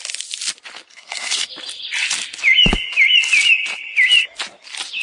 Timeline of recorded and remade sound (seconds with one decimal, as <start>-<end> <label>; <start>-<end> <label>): 0.0-0.9 recorded; 0.9-1.5 remade; 1.5-5.0 recorded